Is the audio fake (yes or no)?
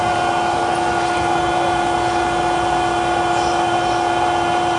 no